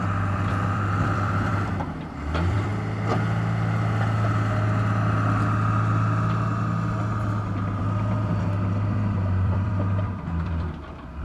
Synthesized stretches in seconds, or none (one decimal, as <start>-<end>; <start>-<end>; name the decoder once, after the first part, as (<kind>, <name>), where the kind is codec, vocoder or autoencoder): 0.0-2.7 (vocoder, BigVGAN v2); 7.8-11.2